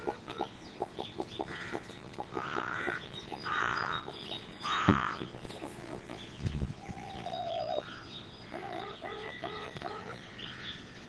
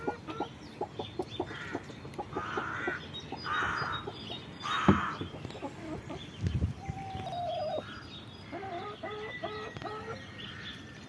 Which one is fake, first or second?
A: first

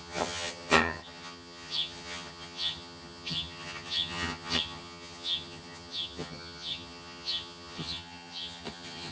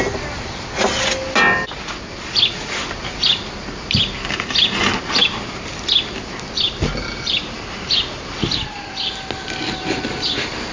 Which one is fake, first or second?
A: first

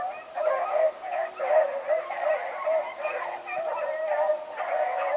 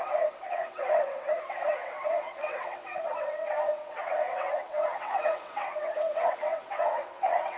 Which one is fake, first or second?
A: second